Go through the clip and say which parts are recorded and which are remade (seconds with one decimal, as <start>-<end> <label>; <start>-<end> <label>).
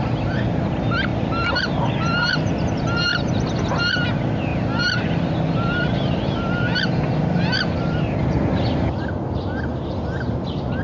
0.0-1.1 recorded; 1.1-1.9 remade; 1.9-3.1 recorded; 3.1-3.9 remade; 3.9-4.5 recorded; 4.5-6.3 remade; 6.3-10.8 recorded